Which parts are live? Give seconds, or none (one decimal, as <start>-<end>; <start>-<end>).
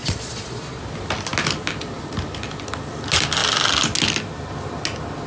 0.8-5.3